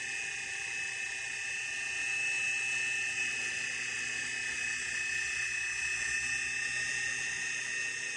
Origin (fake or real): real